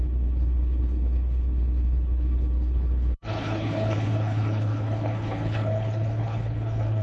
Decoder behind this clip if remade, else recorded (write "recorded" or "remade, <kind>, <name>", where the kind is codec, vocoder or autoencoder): remade, codec, HILCodec